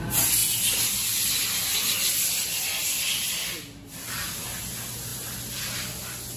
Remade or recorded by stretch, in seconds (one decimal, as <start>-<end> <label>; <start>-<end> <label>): 0.0-2.8 recorded; 2.8-3.3 remade; 3.3-5.1 recorded; 5.1-5.7 remade; 5.7-6.4 recorded